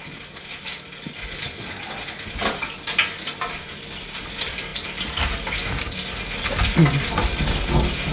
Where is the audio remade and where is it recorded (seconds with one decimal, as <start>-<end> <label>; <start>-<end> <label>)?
0.0-8.1 recorded